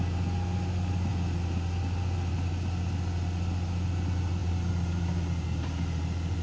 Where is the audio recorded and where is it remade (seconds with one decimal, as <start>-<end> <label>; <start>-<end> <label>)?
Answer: 0.0-4.4 recorded; 4.4-6.4 remade